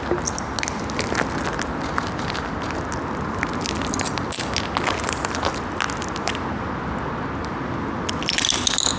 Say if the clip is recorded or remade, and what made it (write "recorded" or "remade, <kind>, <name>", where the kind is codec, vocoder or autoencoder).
recorded